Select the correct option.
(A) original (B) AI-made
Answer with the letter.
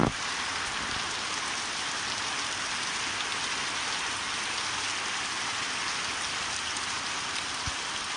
A